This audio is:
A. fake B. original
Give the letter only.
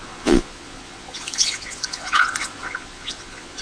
A